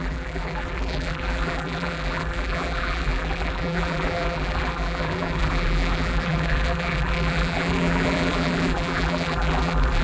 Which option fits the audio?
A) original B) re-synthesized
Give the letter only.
B